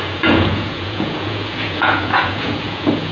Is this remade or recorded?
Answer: remade